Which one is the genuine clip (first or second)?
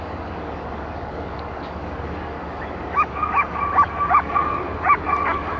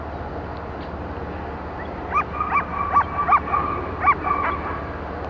second